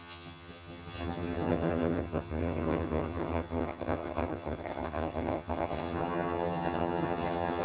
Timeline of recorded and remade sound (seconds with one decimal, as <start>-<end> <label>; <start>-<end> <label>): 0.0-7.6 remade